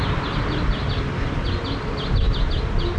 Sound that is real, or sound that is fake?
real